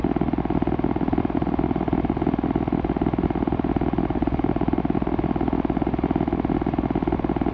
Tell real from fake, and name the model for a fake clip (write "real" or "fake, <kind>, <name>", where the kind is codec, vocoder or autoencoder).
real